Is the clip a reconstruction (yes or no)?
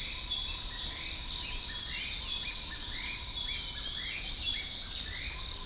no